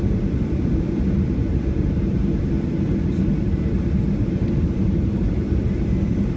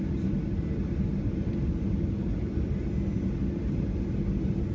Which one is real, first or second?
second